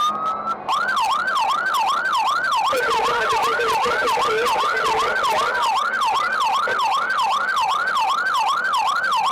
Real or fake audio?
real